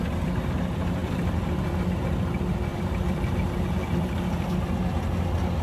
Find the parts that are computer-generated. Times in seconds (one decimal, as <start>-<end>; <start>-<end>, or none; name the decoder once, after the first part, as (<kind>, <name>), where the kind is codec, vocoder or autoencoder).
1.0-1.8 (vocoder, BigVGAN v2); 2.7-4.5

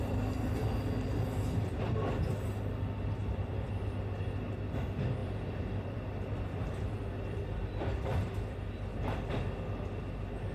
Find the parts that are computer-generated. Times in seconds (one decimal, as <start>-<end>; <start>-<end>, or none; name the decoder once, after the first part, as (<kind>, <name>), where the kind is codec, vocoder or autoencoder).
3.2-3.8 (vocoder, BigVGAN v2); 5.2-7.4

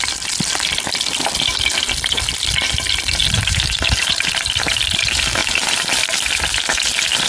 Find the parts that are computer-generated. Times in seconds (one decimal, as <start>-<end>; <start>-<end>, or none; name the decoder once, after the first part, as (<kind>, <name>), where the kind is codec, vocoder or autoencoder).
3.2-4.1 (vocoder, BigVGAN v2); 5.4-6.2

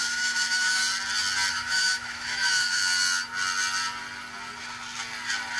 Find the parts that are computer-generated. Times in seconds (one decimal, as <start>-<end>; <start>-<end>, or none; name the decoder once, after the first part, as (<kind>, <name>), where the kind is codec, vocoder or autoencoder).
0.0-0.8 (autoencoder, DAC-VAE); 1.5-2.8

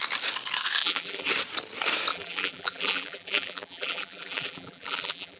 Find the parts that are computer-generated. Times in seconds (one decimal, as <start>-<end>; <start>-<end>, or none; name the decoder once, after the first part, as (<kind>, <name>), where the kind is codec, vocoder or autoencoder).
0.8-1.3 (vocoder, BigVGAN v2); 2.1-5.4

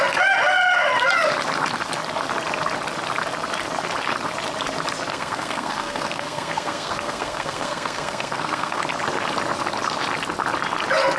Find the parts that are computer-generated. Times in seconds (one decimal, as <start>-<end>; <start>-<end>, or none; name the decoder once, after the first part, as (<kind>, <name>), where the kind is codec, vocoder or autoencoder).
5.1-8.8 (codec, SNAC)

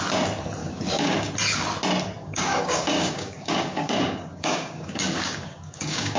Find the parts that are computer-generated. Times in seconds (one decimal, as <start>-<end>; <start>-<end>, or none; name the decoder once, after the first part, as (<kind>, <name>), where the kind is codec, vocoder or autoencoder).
0.6-1.3 (codec, DAC); 2.2-6.2